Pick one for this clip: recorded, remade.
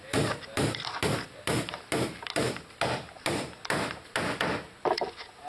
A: recorded